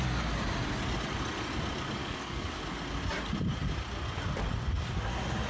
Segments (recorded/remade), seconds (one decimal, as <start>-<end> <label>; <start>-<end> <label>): 0.0-2.0 recorded; 2.0-2.6 remade; 2.6-5.5 recorded